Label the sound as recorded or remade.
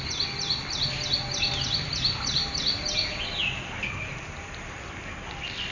recorded